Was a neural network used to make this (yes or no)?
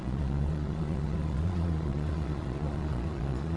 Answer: yes